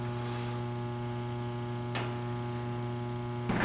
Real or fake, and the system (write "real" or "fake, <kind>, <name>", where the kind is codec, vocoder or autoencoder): real